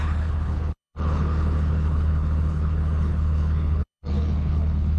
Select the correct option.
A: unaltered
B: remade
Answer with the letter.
B